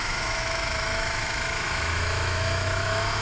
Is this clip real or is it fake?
fake